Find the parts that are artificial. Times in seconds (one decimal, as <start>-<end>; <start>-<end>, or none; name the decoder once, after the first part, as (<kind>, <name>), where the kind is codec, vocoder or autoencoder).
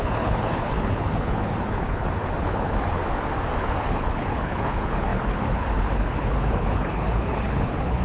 0.0-3.0 (codec, HILCodec); 3.6-8.0